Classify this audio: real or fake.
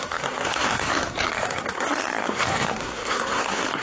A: fake